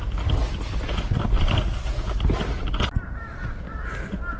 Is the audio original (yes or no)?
yes